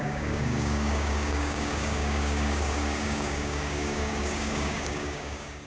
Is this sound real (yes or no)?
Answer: no